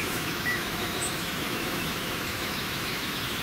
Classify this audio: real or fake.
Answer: fake